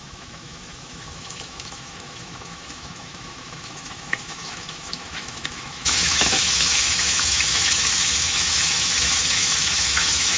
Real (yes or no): no